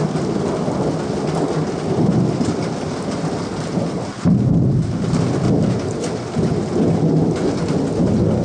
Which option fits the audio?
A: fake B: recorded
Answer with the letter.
B